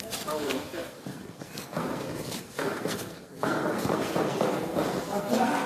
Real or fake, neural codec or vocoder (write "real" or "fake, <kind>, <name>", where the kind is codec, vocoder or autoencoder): fake, codec, SNAC